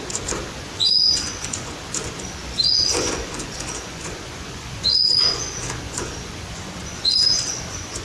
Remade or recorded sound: remade